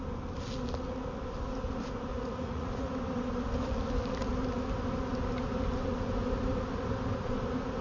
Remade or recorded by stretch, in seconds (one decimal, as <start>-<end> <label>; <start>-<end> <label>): 0.0-2.1 recorded; 2.1-2.9 remade; 2.9-7.8 recorded